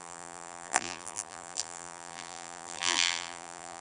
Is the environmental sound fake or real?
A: fake